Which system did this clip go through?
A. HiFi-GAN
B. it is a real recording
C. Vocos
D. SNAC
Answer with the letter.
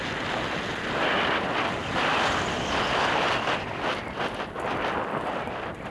B